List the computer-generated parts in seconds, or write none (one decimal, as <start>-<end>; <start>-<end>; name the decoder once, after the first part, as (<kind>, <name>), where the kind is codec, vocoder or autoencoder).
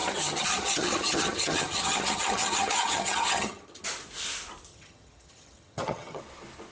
0.0-3.8 (vocoder, HiFi-GAN); 4.7-6.2